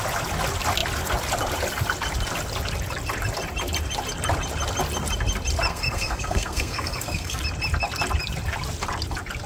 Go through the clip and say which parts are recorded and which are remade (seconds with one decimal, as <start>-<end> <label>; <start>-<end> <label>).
0.0-5.7 recorded; 5.7-7.4 remade; 7.4-9.5 recorded